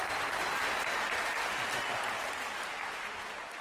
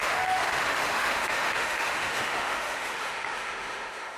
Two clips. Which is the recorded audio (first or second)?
first